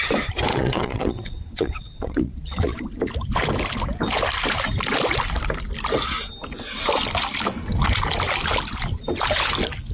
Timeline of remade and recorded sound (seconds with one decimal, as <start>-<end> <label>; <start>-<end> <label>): 0.0-0.5 recorded; 0.5-2.8 remade; 2.8-9.9 recorded